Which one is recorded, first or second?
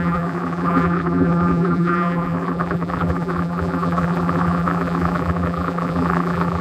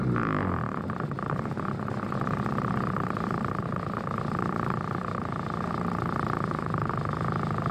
second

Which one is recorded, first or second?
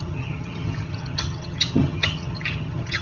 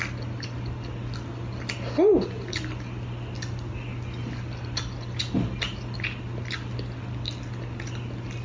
second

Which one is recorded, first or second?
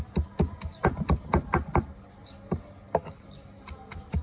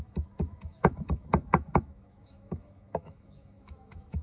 first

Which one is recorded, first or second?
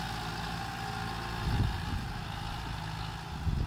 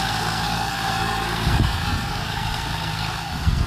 first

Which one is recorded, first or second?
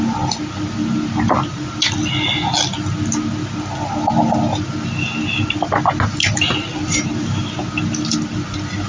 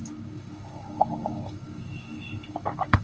first